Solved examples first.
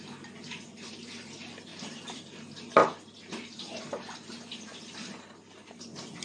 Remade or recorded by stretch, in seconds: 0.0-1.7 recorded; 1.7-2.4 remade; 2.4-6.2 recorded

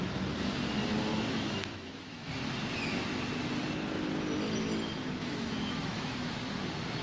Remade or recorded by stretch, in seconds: 0.0-1.1 recorded; 1.1-2.3 remade; 2.3-5.2 recorded; 5.2-6.3 remade; 6.3-7.0 recorded

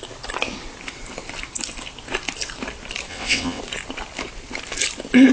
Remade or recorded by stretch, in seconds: 0.0-3.1 recorded; 3.1-3.6 remade; 3.6-5.3 recorded

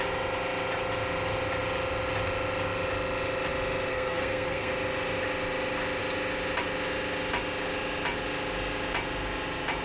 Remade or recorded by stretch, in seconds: 0.0-3.9 recorded; 3.9-4.7 remade; 4.7-9.8 recorded